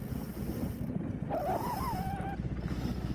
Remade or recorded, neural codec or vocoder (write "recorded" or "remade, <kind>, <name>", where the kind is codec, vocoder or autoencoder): recorded